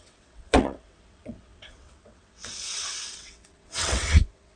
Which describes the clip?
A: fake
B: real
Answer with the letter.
A